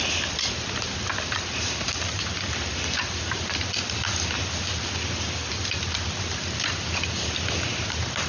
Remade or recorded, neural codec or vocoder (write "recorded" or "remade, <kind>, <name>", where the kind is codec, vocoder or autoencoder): recorded